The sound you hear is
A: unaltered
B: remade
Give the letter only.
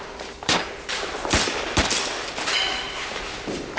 B